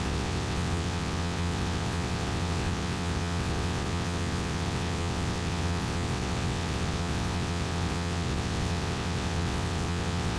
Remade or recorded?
remade